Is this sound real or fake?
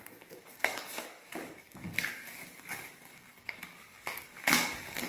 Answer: fake